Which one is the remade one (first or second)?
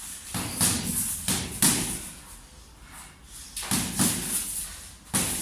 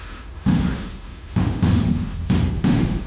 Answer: second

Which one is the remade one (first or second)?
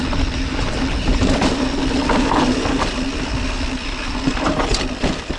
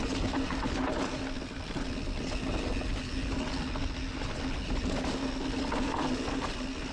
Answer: first